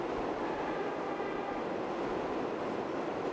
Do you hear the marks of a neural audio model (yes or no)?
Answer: no